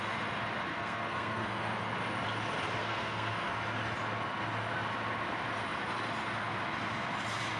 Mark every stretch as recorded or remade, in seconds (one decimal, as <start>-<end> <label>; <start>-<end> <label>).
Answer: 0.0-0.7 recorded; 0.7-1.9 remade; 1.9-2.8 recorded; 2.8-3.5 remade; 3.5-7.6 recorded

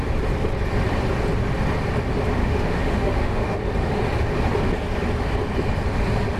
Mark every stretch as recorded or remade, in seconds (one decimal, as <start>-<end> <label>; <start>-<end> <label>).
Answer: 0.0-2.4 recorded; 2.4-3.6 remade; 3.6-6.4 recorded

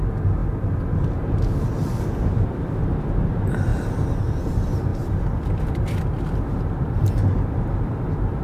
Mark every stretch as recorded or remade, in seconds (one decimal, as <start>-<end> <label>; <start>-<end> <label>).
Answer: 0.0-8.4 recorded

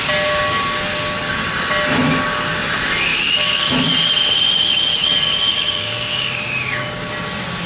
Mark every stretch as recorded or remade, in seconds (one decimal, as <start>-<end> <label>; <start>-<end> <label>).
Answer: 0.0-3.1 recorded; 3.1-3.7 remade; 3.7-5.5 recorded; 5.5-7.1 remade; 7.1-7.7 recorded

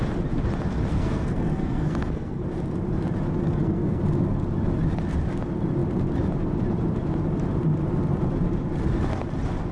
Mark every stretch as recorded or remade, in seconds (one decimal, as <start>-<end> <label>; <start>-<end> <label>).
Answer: 0.0-0.9 recorded; 0.9-2.4 remade; 2.4-3.4 recorded; 3.4-4.0 remade; 4.0-9.7 recorded

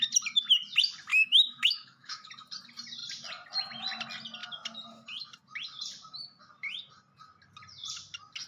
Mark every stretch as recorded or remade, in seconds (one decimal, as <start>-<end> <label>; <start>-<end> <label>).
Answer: 0.0-1.1 recorded; 1.1-2.3 remade; 2.3-8.5 recorded

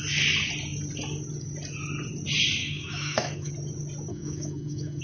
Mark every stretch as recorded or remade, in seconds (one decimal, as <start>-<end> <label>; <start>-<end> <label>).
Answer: 0.0-2.6 recorded; 2.6-3.5 remade; 3.5-4.1 recorded; 4.1-5.0 remade

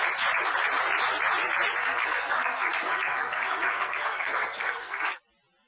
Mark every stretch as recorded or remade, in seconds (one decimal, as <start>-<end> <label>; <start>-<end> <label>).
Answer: 0.0-1.8 recorded; 1.8-5.2 remade; 5.2-5.7 recorded